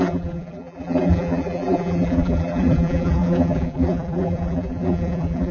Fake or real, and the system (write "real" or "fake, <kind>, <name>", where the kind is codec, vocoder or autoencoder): fake, vocoder, BigVGAN v2